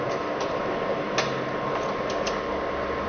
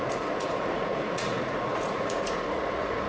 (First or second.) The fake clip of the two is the second